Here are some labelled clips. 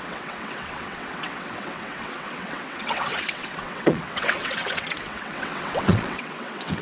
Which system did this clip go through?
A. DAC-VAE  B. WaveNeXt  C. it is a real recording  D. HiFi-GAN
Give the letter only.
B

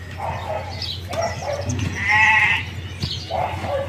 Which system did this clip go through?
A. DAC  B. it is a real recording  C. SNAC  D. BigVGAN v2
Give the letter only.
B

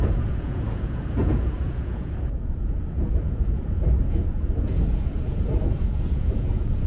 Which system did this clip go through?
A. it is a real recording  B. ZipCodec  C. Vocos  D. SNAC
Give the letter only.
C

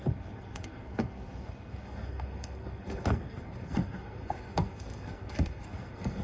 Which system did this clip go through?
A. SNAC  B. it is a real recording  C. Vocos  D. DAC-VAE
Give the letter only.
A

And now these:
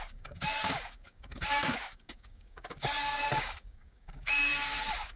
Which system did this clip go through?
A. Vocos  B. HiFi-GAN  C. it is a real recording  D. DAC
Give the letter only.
D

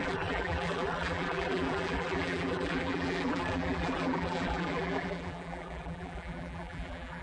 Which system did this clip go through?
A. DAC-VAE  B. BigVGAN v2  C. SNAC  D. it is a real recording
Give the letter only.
B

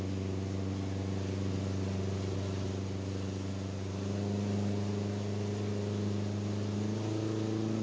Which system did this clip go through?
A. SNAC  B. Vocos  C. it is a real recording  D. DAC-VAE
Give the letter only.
C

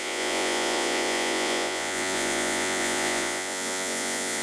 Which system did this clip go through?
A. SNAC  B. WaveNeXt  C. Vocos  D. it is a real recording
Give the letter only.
C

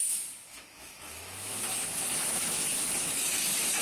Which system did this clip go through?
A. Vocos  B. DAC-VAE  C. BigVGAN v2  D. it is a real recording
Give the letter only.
B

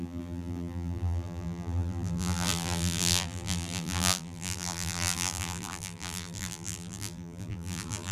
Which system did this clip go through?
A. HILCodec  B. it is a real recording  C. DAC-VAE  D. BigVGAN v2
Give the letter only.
D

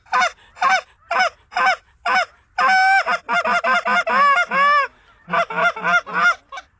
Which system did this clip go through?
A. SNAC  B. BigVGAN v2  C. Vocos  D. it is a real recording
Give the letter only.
D